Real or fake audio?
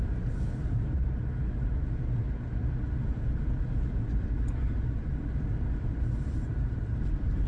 fake